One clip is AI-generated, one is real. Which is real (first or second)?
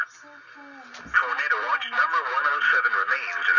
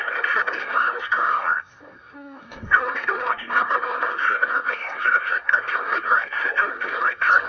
first